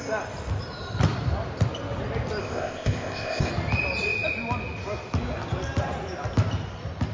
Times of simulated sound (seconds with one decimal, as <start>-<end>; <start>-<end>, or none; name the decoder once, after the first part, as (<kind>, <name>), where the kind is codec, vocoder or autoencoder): 2.4-3.5 (codec, ZipCodec)